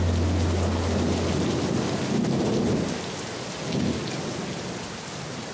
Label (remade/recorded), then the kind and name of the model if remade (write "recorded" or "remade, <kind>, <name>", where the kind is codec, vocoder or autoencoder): recorded